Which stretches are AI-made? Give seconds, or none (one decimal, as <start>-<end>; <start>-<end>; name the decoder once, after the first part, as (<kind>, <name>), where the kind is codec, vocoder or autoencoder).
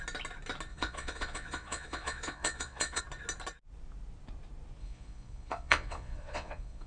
0.7-3.0 (vocoder, Vocos); 4.8-6.9